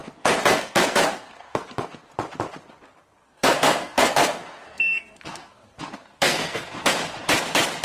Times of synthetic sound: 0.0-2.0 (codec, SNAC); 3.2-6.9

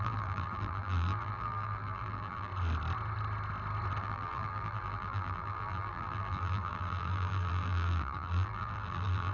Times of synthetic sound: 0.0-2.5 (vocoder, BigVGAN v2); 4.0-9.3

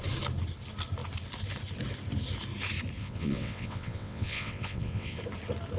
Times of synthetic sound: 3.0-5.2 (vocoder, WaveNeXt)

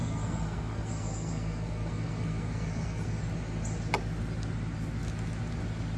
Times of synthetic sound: 0.0-3.2 (codec, SNAC)

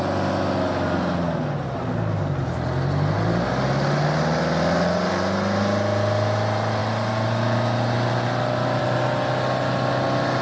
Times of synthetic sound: none

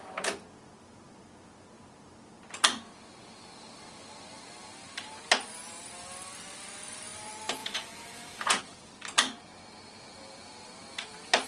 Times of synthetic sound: 7.6-8.6 (vocoder, Vocos)

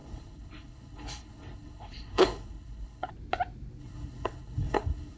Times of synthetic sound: 0.0-3.1 (codec, HILCodec); 3.8-5.2

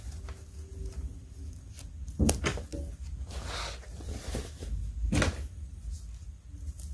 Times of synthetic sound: none